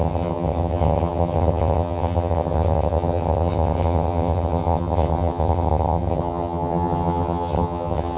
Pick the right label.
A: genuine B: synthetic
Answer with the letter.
B